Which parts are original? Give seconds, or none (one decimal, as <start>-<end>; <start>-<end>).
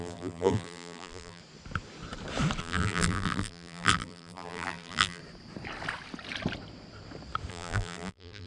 1.4-2.6; 5.2-7.5